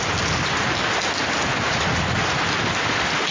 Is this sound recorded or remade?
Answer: recorded